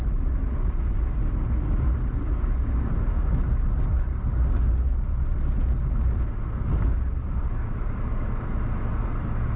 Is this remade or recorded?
recorded